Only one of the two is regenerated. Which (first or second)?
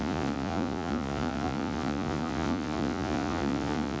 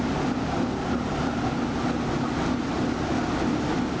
first